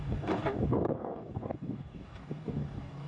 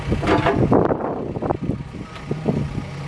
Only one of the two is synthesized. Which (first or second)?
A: first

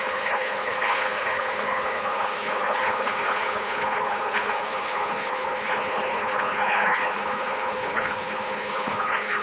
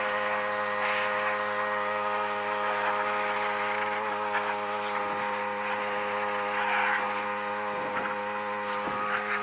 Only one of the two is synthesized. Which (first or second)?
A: first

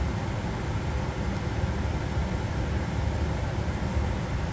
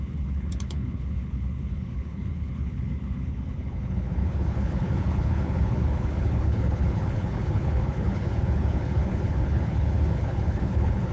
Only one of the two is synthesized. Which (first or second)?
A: second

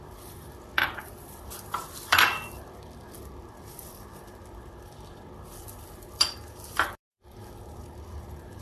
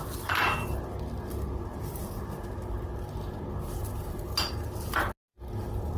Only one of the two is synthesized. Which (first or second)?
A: first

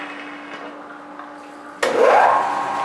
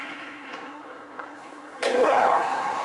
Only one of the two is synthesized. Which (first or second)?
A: second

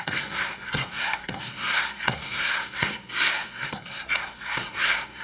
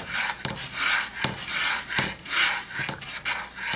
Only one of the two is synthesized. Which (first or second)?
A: first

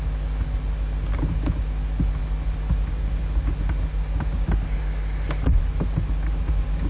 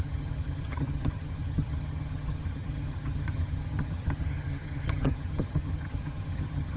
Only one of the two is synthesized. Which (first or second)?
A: second